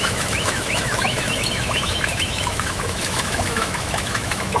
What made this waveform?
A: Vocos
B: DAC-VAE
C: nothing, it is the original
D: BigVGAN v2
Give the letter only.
B